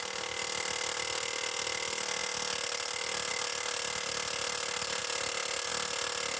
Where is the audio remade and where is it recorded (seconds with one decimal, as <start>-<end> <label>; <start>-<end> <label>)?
0.0-6.4 recorded